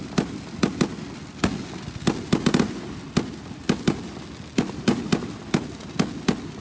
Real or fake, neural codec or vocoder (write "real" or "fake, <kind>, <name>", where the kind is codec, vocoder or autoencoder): real